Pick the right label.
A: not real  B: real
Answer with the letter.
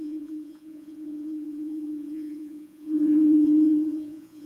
A